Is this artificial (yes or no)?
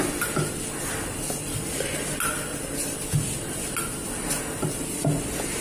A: no